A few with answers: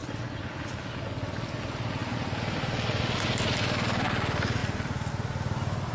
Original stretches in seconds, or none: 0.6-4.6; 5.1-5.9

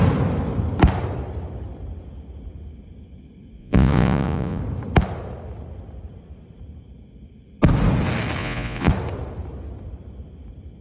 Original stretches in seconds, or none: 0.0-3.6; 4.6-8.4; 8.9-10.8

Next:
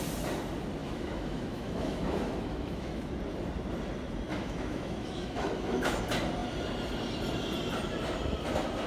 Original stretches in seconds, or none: 0.0-0.8; 3.1-4.3; 6.0-8.9